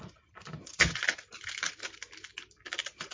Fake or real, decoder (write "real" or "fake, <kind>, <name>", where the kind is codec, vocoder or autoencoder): real